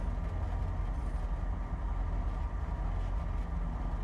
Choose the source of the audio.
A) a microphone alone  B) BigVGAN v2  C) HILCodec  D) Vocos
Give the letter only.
A